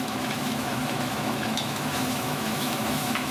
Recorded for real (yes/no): no